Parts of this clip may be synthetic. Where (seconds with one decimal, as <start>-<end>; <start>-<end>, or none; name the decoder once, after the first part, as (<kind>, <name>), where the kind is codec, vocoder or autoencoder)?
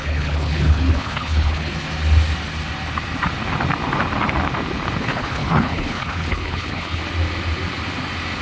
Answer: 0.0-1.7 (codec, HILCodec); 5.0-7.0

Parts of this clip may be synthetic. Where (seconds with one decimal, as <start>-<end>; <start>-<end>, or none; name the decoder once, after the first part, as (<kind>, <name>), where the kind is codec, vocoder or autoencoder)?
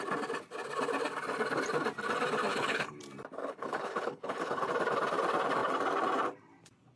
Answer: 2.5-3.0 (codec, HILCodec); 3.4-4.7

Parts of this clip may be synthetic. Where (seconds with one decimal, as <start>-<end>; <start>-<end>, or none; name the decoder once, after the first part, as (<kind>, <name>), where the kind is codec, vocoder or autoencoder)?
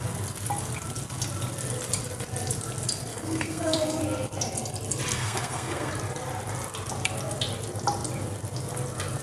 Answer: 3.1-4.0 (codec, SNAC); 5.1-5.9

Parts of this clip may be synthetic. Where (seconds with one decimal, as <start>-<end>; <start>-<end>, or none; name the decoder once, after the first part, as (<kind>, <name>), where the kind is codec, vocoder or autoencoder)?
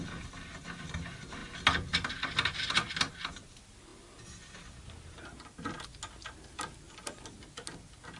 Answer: none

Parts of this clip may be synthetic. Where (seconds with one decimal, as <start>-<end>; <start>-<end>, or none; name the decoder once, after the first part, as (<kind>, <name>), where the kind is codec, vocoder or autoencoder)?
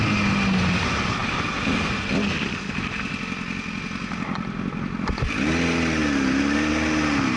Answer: none